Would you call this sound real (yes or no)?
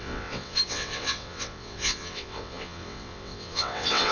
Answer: no